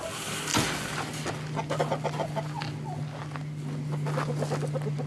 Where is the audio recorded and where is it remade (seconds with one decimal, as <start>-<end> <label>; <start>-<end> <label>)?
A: 0.0-5.1 recorded